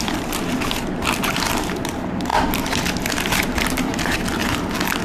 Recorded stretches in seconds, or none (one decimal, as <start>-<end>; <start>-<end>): 0.0-5.0